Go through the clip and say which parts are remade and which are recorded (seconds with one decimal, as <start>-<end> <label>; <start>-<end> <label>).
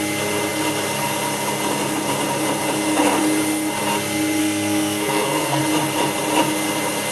0.0-4.4 recorded; 4.4-5.6 remade; 5.6-7.1 recorded